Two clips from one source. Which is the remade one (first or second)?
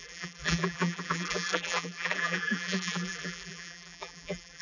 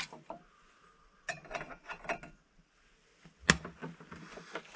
first